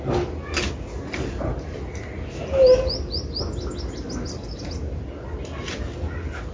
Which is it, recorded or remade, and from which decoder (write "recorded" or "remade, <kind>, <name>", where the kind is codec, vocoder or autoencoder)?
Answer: recorded